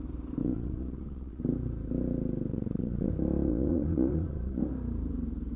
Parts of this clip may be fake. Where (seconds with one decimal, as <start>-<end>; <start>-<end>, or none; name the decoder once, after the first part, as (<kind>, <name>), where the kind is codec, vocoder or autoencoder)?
0.4-1.4 (vocoder, Vocos); 2.5-3.1; 3.5-4.6

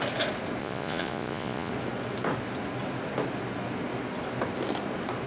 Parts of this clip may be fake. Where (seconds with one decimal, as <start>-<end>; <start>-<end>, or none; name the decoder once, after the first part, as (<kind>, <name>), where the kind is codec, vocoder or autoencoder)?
0.6-1.7 (vocoder, Vocos)

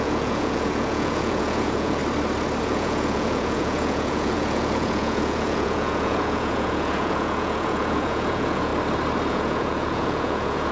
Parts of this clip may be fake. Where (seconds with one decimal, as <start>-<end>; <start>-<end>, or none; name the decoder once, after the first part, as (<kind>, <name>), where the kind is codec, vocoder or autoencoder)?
0.0-2.0 (vocoder, Vocos); 2.6-8.7; 9.3-10.7

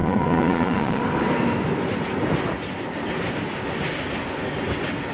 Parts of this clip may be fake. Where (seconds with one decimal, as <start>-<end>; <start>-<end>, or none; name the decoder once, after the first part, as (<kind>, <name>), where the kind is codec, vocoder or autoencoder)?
0.0-1.0 (vocoder, Vocos)

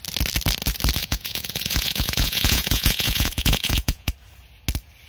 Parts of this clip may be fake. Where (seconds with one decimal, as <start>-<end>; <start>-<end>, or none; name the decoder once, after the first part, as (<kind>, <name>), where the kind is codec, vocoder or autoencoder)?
1.0-4.1 (vocoder, Vocos)

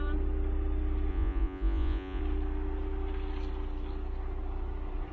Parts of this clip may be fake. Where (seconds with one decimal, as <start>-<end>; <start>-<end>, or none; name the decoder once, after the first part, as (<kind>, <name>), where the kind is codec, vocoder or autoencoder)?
1.1-2.2 (vocoder, Vocos)

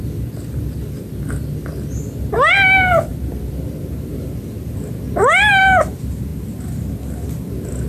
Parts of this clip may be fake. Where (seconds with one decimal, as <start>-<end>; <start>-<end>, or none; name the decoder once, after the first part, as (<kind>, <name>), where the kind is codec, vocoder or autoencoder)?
none